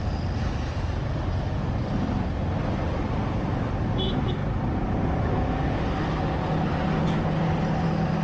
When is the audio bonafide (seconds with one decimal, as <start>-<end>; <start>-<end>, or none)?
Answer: 0.0-8.2